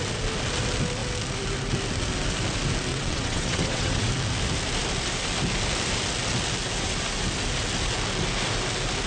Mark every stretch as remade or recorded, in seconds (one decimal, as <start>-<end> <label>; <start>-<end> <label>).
0.0-2.9 recorded; 2.9-4.1 remade; 4.1-9.1 recorded